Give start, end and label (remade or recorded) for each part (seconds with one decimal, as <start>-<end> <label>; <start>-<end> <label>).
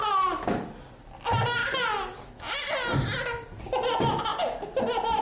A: 0.0-5.2 recorded